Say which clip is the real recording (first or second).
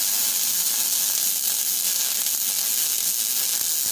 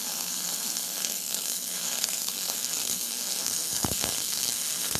first